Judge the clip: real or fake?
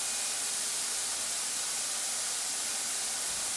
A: real